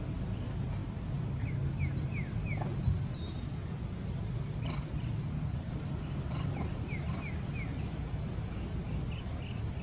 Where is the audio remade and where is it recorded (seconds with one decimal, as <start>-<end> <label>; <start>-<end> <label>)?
0.0-9.8 recorded